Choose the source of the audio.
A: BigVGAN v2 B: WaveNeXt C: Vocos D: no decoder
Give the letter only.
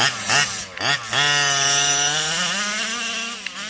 D